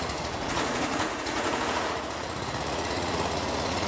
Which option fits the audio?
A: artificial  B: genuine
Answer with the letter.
A